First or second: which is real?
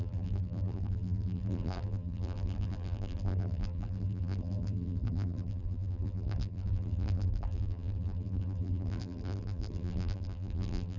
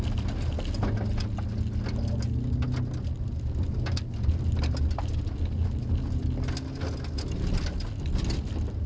second